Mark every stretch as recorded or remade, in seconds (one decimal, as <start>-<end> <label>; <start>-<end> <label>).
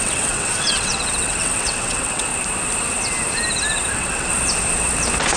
0.0-2.3 remade; 2.3-3.9 recorded; 3.9-4.3 remade; 4.3-5.4 recorded